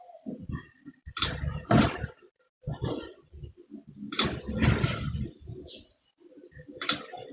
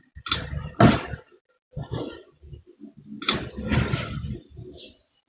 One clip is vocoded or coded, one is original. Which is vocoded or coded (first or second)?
first